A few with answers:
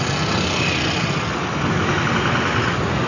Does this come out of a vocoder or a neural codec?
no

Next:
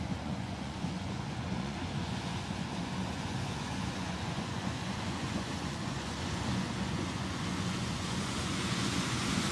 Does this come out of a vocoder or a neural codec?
yes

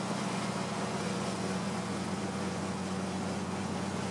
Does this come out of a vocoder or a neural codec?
yes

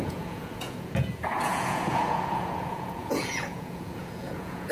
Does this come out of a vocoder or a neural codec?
yes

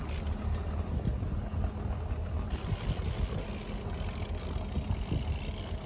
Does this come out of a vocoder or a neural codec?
no